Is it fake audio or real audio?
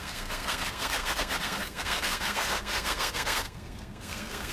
fake